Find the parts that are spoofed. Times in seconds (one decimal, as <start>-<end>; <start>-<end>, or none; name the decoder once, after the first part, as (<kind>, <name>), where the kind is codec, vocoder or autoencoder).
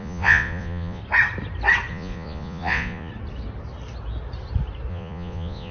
0.0-1.0 (vocoder, Vocos); 1.9-3.1; 4.9-5.7